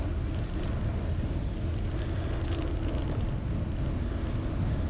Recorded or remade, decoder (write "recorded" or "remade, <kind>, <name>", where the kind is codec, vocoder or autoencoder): recorded